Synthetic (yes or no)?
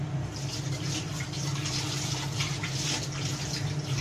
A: no